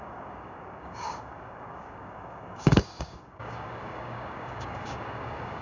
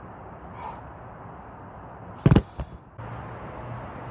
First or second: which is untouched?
second